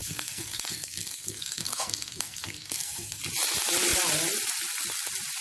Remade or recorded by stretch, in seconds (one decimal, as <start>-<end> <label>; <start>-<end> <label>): 0.0-3.2 remade; 3.2-5.4 recorded